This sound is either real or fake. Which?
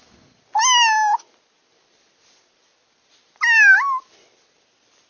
real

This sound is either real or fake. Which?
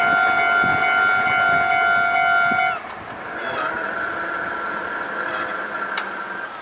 real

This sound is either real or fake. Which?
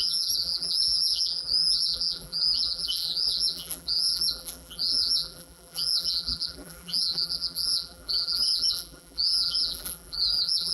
fake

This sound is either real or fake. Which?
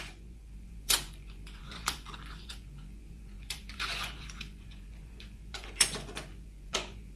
fake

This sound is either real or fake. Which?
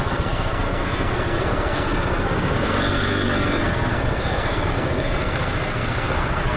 fake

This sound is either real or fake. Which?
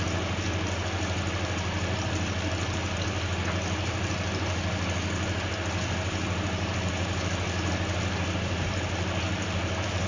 real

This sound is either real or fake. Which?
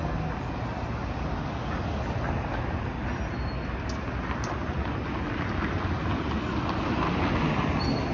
real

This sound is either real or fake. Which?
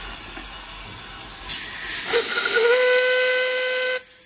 real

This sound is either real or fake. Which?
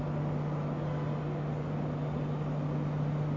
real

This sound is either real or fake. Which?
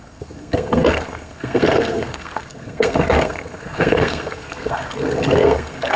fake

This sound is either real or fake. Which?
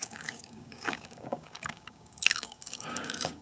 fake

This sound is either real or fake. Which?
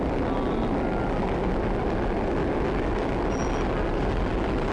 real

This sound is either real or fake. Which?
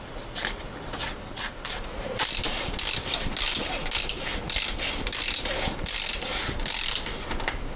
real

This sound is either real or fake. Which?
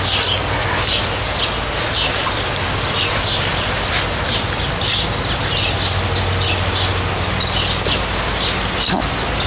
real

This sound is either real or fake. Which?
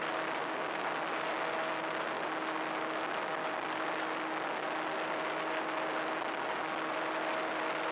real